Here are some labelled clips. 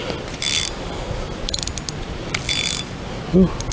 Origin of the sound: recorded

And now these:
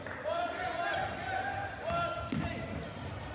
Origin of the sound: recorded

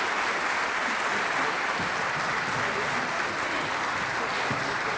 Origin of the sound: recorded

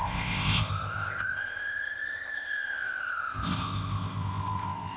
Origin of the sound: remade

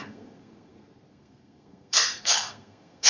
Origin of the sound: remade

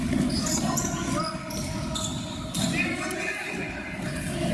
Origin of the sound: recorded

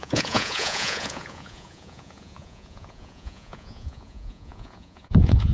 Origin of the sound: remade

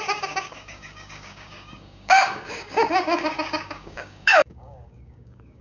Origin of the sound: remade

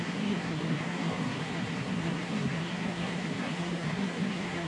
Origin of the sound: remade